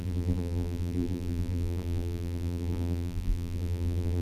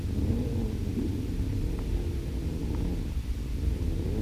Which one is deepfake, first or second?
first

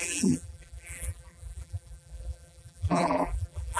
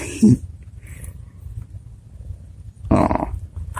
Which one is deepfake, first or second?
first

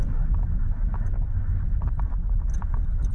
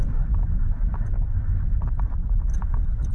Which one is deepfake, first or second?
second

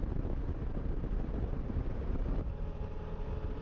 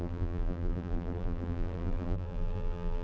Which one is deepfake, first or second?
second